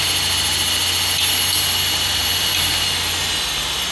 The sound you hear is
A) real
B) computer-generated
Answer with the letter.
A